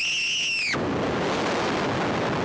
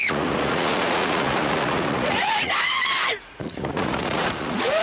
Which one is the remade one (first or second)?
second